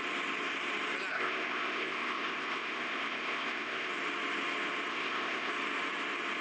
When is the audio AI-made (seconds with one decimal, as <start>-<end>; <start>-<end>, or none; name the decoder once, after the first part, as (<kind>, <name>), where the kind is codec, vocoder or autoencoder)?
1.1-3.9 (codec, ZipCodec); 4.9-5.5